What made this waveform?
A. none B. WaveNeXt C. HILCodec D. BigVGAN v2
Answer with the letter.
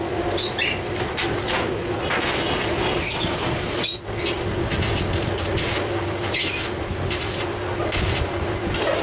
A